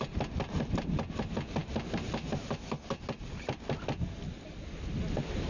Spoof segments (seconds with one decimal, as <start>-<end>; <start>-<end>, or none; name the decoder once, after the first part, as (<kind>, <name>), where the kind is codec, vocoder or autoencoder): none